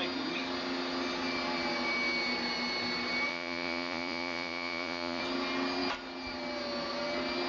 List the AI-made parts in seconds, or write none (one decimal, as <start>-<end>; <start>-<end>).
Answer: 3.3-5.2